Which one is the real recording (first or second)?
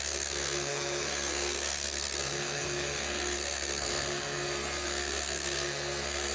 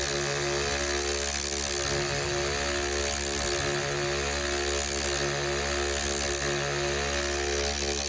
second